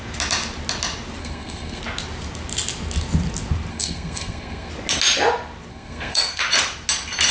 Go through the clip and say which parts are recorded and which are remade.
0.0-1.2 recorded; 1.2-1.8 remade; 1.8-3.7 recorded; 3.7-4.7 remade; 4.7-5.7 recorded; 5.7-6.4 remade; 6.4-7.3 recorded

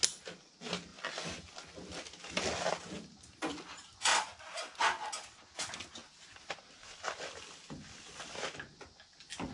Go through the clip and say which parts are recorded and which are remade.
0.0-9.5 recorded

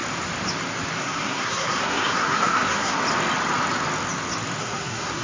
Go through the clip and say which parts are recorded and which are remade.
0.0-1.0 recorded; 1.0-3.0 remade; 3.0-4.6 recorded; 4.6-5.2 remade

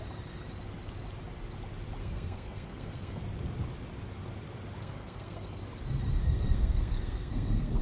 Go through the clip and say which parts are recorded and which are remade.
0.0-2.0 recorded; 2.0-3.2 remade; 3.2-4.8 recorded; 4.8-5.6 remade; 5.6-6.2 recorded; 6.2-7.8 remade

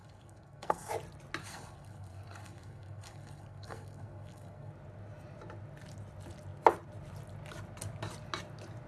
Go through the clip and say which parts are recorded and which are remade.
0.0-0.9 remade; 0.9-1.4 recorded; 1.4-4.7 remade; 4.7-8.9 recorded

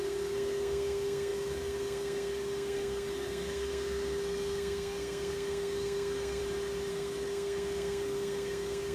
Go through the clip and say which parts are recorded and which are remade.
0.0-6.4 remade; 6.4-6.9 recorded; 6.9-8.9 remade

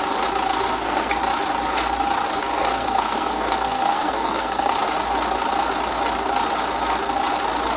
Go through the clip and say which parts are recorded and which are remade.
0.0-0.5 recorded; 0.5-1.1 remade; 1.1-2.4 recorded; 2.4-4.7 remade; 4.7-7.8 recorded

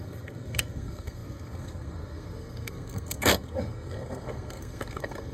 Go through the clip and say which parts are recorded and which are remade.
0.0-5.3 remade